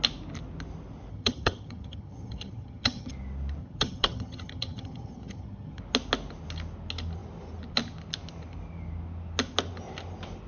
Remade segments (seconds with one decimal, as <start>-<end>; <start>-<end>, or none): 1.1-3.1; 3.6-5.8